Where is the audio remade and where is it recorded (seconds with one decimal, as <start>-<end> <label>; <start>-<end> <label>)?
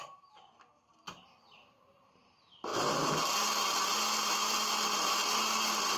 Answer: 0.0-6.0 recorded